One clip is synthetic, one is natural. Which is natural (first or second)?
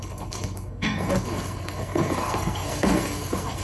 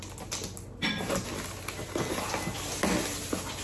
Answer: second